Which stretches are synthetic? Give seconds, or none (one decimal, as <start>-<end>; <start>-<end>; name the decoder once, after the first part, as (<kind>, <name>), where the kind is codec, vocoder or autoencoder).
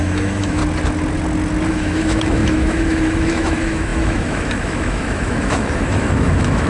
0.0-0.6 (autoencoder, DAC-VAE); 1.7-6.7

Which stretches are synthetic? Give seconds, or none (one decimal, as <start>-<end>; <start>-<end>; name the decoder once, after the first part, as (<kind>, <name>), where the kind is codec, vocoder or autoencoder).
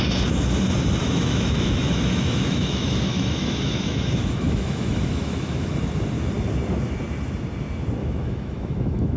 1.0-5.7 (autoencoder, DAC-VAE); 8.0-9.2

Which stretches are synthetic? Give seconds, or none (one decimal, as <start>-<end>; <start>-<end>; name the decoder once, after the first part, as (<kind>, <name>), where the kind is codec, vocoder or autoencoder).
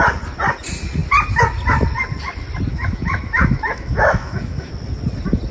2.7-4.7 (autoencoder, DAC-VAE)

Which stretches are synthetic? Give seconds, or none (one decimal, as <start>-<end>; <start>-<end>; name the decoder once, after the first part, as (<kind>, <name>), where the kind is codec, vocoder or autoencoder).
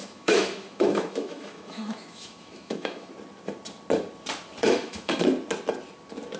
0.0-3.1 (autoencoder, DAC-VAE); 4.6-5.2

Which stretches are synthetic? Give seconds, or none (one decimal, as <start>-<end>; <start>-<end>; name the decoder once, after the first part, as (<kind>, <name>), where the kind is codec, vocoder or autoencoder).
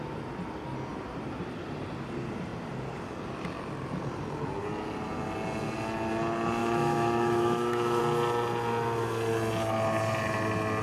6.6-8.0 (autoencoder, DAC-VAE)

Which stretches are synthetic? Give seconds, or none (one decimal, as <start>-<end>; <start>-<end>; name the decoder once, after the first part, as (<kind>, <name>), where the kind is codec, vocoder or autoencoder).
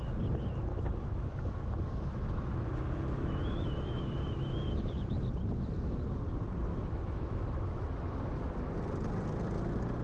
0.7-5.0 (autoencoder, DAC-VAE); 6.7-8.7